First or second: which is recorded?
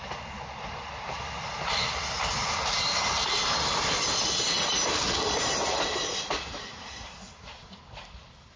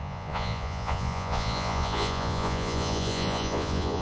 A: first